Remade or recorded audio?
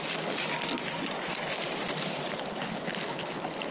recorded